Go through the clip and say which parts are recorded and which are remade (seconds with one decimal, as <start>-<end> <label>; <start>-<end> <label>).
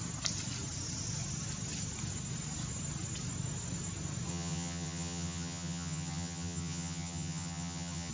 0.0-4.3 recorded; 4.3-8.1 remade